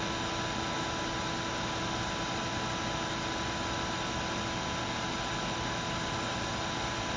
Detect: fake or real real